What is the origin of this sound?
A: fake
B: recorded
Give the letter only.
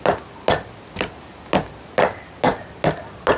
B